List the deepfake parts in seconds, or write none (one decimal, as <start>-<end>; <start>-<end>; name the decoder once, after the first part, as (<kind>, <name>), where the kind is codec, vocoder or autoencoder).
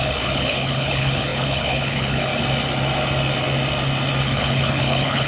0.0-2.3 (codec, HILCodec); 4.2-5.3